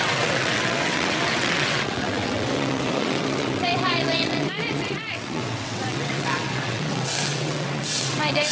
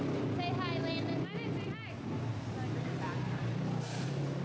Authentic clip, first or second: second